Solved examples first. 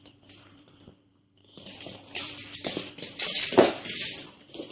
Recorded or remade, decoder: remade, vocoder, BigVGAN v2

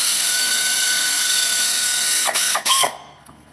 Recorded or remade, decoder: remade, codec, SNAC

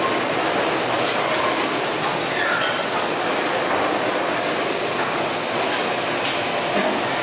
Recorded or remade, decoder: recorded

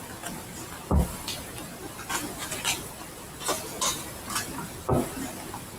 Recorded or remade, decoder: recorded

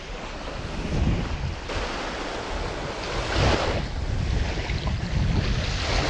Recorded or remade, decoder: recorded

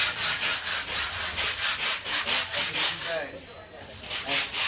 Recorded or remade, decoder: recorded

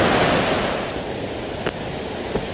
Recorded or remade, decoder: recorded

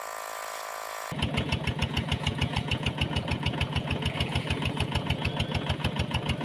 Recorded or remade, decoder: remade, vocoder, Vocos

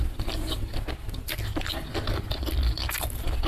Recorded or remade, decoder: recorded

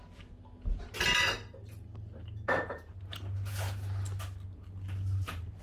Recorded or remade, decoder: recorded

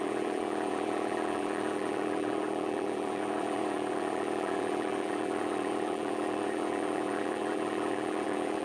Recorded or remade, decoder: remade, vocoder, BigVGAN v2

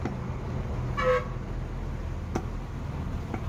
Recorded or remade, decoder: recorded